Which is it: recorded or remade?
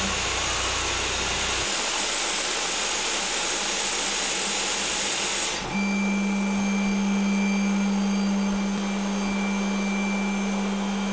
recorded